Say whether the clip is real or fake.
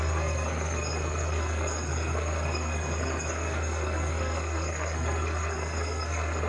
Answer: fake